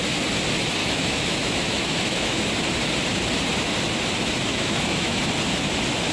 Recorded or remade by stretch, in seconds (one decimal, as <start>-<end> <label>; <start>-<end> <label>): 0.0-0.8 recorded; 0.8-2.5 remade; 2.5-4.5 recorded; 4.5-5.2 remade; 5.2-6.1 recorded